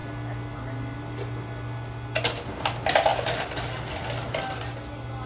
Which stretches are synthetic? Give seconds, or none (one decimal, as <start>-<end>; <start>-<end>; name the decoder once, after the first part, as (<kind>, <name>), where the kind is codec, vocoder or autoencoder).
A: none